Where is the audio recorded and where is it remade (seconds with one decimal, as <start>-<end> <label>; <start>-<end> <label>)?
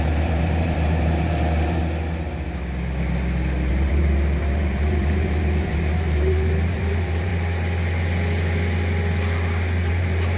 0.0-1.8 remade; 1.8-3.7 recorded; 3.7-7.3 remade; 7.3-9.9 recorded; 9.9-10.4 remade